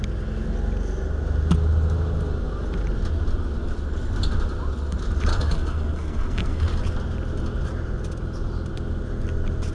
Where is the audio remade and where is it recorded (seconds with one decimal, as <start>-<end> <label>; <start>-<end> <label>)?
0.0-5.3 recorded; 5.3-6.7 remade; 6.7-9.7 recorded